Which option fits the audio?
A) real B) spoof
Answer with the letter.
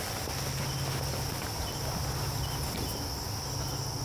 A